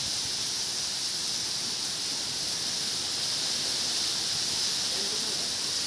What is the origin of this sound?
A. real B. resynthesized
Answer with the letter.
A